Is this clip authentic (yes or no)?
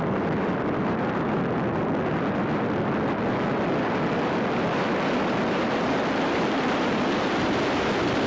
yes